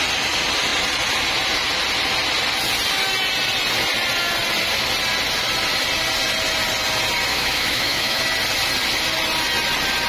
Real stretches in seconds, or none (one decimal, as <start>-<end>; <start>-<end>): 0.0-7.3; 8.2-10.1